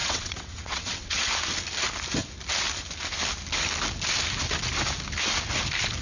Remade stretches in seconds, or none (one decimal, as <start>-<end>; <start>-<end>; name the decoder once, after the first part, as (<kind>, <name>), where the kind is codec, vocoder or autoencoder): 0.0-1.3 (vocoder, WaveNeXt)